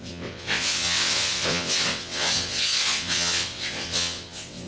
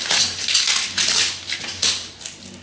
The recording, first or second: second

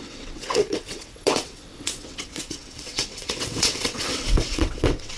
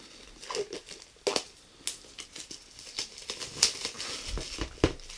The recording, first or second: second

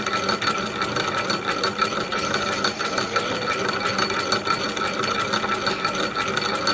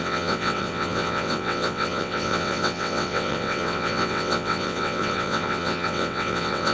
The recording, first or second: first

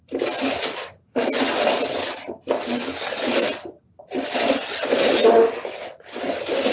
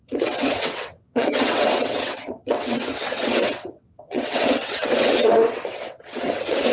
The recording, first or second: first